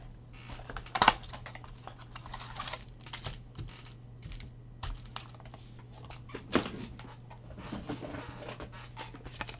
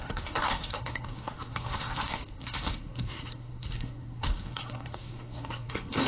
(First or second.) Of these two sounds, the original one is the first